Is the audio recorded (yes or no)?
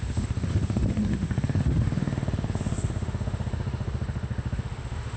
no